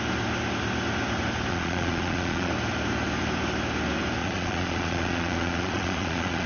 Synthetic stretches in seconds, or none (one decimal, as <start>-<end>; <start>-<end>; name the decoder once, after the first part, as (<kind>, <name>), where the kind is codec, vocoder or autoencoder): 1.5-2.5 (vocoder, Vocos); 4.2-6.5